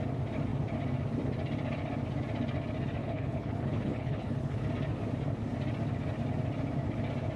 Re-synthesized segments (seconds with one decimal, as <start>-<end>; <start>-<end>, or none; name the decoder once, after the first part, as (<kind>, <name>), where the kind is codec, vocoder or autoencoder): 3.0-4.7 (codec, HILCodec)